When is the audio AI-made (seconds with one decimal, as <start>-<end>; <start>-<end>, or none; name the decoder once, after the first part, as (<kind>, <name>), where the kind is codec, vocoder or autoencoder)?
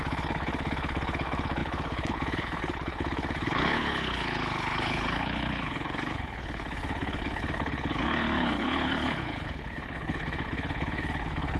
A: 0.0-11.6 (codec, HILCodec)